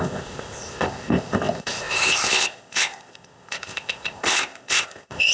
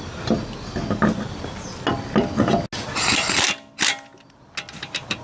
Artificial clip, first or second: first